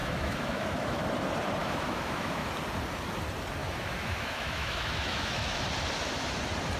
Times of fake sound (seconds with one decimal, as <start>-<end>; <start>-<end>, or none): 0.0-1.0; 1.6-2.5; 3.6-5.6